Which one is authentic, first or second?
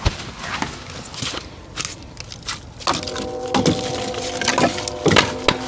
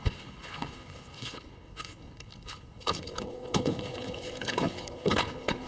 first